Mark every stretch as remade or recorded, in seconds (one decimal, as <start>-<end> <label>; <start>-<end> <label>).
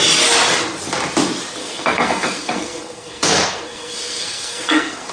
0.0-1.6 recorded; 1.6-5.1 remade